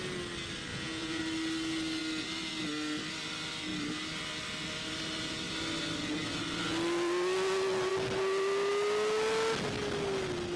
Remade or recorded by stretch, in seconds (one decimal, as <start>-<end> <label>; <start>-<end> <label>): 0.0-0.7 recorded; 0.7-1.2 remade; 1.2-10.6 recorded